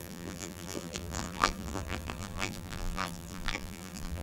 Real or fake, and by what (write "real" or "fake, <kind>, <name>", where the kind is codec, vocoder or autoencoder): fake, vocoder, BigVGAN v2